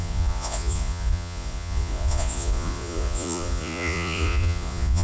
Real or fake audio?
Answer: fake